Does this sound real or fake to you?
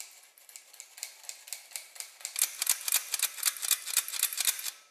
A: real